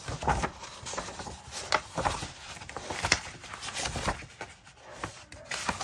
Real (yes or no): yes